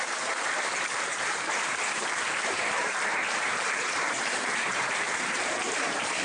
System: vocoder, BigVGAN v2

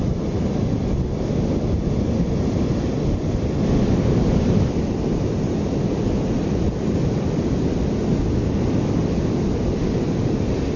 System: none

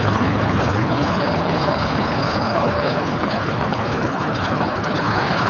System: codec, HILCodec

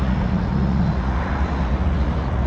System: vocoder, Vocos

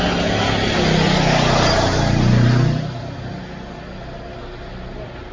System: none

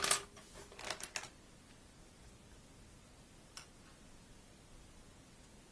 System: none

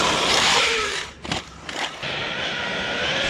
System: vocoder, BigVGAN v2